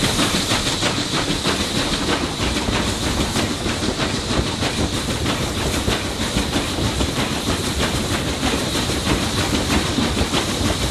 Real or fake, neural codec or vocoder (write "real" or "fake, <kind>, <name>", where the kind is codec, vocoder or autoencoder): fake, vocoder, BigVGAN v2